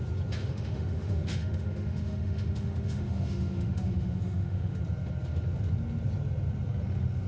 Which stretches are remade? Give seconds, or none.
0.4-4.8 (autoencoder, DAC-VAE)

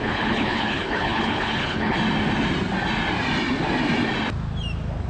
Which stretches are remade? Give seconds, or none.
0.0-2.0 (codec, HILCodec)

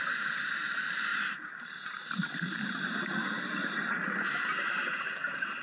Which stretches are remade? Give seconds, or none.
none

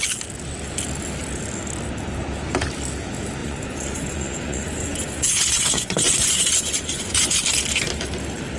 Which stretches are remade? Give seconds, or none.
3.4-7.4 (vocoder, Vocos)

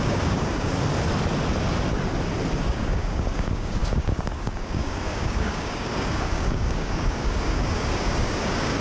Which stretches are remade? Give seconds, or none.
0.0-0.7 (codec, DAC); 2.6-8.8

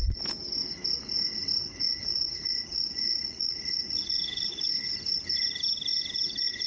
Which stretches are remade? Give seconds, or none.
1.9-4.7 (vocoder, Vocos)

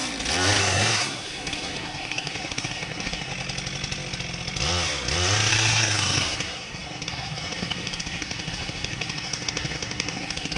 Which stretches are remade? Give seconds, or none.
0.6-3.3 (codec, SNAC); 5.5-10.6